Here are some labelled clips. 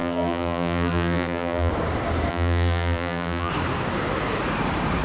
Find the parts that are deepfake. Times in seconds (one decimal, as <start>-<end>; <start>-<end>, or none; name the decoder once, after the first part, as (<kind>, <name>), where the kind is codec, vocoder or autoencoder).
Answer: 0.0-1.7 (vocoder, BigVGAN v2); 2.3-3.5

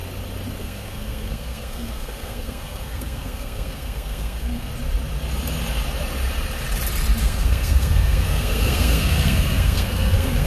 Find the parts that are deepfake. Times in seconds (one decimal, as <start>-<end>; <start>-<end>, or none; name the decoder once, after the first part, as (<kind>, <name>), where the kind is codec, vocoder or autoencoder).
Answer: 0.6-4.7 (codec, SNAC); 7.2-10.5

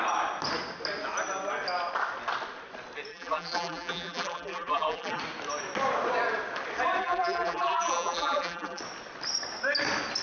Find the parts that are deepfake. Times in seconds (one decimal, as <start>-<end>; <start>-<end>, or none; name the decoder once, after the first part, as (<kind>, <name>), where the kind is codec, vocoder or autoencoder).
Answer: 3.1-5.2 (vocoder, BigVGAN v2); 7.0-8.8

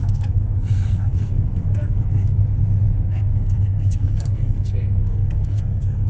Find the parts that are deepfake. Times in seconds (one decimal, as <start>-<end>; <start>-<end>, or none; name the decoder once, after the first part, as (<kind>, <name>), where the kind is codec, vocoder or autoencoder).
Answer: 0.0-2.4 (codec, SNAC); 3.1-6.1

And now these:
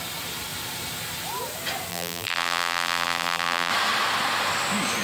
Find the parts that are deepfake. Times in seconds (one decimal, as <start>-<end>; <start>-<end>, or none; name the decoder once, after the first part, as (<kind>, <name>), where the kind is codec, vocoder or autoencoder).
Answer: 1.9-3.7 (vocoder, BigVGAN v2)